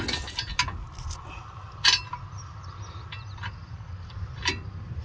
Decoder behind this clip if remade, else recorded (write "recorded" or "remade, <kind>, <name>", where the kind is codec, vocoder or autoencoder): recorded